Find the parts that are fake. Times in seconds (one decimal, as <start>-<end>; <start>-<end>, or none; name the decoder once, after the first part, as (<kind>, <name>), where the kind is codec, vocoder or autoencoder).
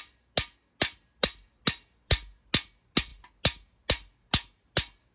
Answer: none